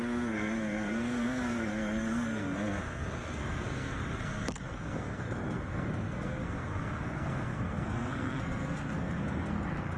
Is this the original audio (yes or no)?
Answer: no